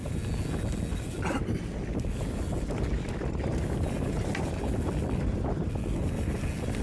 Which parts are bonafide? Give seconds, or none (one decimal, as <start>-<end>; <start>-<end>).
0.0-6.8